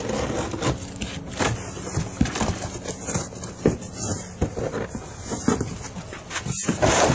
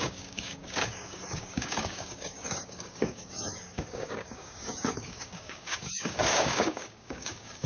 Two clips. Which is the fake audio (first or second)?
second